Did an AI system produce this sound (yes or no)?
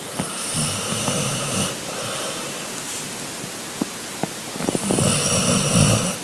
no